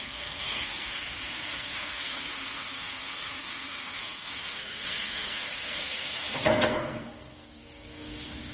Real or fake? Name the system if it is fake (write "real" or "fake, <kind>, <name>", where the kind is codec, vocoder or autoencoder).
fake, codec, SNAC